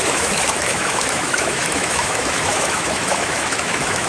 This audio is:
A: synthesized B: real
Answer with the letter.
A